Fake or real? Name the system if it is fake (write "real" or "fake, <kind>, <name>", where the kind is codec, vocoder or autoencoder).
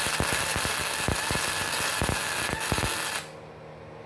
real